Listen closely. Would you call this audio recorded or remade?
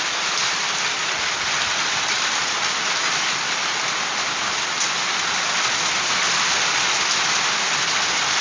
recorded